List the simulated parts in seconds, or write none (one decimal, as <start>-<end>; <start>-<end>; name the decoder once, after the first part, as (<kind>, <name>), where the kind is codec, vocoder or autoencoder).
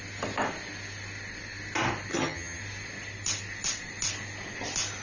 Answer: 2.1-2.6 (vocoder, HiFi-GAN)